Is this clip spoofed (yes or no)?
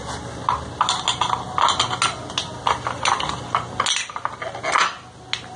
no